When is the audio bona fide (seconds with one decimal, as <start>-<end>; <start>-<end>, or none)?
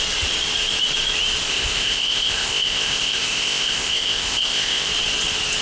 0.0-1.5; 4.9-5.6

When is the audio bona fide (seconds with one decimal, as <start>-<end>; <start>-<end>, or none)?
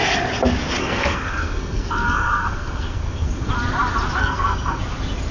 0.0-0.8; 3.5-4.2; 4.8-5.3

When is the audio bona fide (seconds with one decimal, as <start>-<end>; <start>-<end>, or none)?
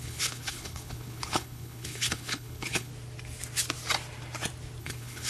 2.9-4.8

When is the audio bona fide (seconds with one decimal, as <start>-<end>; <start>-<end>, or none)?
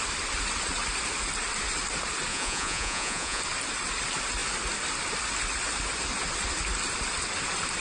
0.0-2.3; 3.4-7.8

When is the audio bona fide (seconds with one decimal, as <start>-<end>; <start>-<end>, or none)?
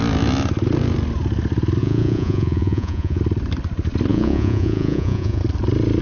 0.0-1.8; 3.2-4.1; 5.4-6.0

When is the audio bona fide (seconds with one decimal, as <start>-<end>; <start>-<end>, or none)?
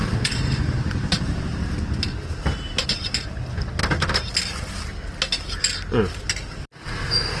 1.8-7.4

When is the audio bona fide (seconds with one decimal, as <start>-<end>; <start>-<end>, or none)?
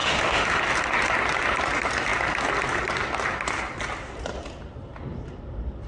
0.6-5.9